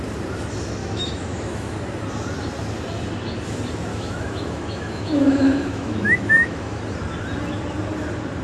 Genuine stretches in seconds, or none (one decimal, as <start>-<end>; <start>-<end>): 0.0-0.8; 1.7-3.9; 6.8-8.4